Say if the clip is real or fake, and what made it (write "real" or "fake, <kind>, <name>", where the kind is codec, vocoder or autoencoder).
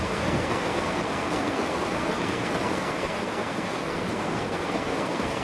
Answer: fake, codec, SNAC